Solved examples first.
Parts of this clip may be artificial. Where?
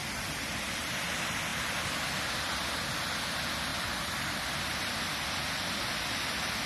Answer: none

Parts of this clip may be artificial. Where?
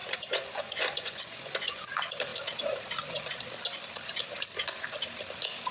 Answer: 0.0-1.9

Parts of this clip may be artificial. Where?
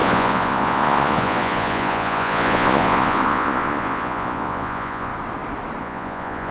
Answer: 0.0-5.1; 5.8-6.5